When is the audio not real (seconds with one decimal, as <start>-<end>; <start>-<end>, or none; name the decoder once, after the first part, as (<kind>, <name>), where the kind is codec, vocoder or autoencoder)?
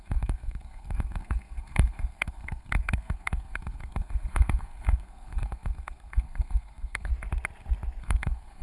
0.0-7.1 (codec, SNAC); 8.0-8.6